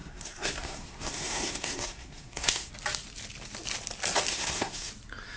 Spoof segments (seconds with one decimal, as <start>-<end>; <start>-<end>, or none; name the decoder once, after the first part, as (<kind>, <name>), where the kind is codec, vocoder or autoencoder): 0.0-2.7 (codec, SNAC); 4.3-4.9